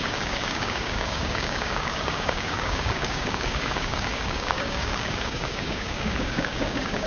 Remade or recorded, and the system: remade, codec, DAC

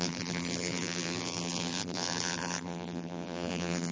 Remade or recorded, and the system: remade, vocoder, BigVGAN v2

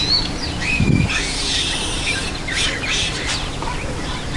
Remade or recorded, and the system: recorded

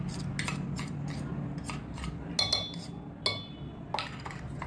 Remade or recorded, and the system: recorded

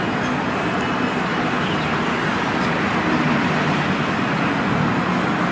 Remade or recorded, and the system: recorded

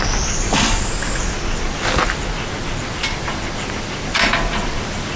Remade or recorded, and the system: recorded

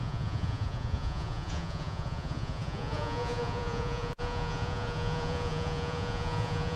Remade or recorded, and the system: remade, vocoder, Vocos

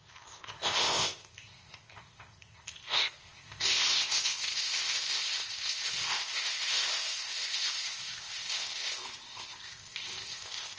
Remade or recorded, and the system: remade, codec, ZipCodec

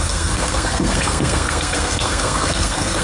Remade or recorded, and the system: remade, codec, SNAC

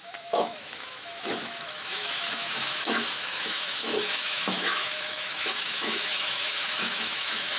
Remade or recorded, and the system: remade, autoencoder, DAC-VAE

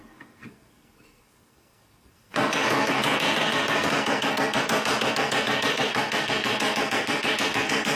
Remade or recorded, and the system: remade, codec, SNAC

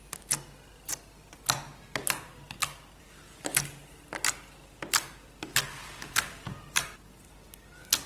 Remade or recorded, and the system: recorded